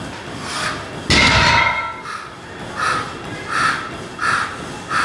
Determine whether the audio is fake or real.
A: real